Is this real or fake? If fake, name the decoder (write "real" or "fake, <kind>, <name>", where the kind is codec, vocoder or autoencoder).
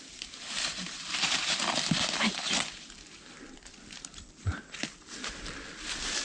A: real